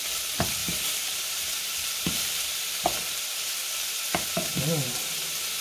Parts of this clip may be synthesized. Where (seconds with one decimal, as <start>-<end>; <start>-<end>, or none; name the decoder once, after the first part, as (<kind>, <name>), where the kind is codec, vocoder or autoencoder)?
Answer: 0.6-3.6 (vocoder, BigVGAN v2); 4.5-5.0